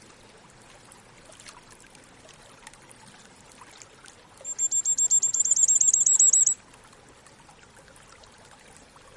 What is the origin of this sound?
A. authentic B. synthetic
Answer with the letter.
A